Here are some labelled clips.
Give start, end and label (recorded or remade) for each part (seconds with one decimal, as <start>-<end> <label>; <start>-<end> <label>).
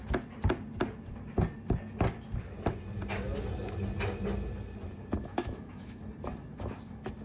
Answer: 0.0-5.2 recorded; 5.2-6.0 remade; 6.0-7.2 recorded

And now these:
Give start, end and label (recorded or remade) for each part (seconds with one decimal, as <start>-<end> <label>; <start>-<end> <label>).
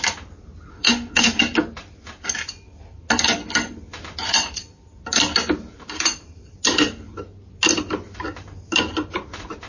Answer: 0.0-0.7 recorded; 0.7-1.4 remade; 1.4-9.7 recorded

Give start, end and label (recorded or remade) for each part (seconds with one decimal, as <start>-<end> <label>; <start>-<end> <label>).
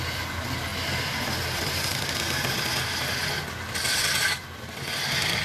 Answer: 0.0-5.4 recorded